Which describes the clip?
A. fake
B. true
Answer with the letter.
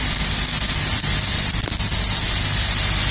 B